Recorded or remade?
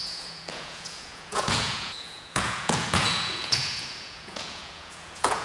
remade